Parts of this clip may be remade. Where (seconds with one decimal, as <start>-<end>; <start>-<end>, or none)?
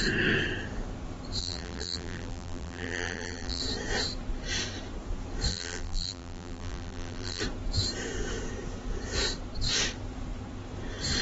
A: 1.4-3.6; 5.5-7.4